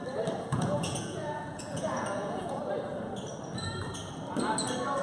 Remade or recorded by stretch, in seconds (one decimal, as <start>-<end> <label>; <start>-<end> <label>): 0.0-0.5 recorded; 0.5-2.6 remade; 2.6-5.0 recorded